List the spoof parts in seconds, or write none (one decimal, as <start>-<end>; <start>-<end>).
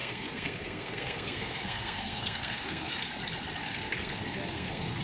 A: 0.0-3.0; 3.6-5.0